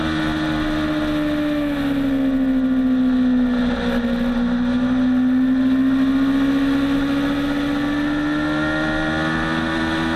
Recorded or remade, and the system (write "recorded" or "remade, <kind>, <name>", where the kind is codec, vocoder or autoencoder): recorded